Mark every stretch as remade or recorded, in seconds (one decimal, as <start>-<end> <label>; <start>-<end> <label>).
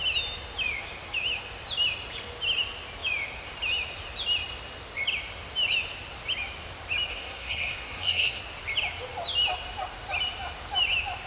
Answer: 0.0-7.1 recorded; 7.1-8.4 remade; 8.4-11.3 recorded